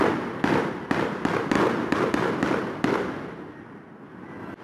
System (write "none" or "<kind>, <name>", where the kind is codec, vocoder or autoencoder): none